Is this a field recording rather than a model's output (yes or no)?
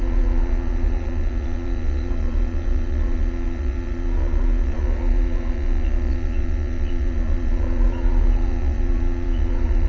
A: no